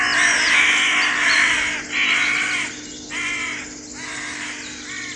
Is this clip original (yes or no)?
yes